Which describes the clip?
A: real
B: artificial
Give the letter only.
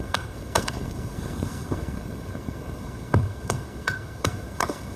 B